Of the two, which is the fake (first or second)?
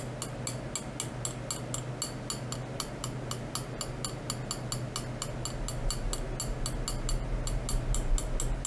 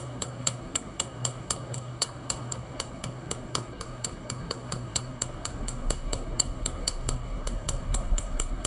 second